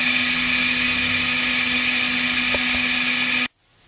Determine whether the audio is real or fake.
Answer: real